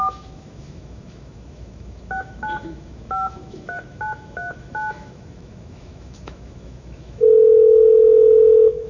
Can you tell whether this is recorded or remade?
remade